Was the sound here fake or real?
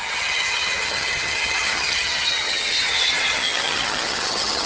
fake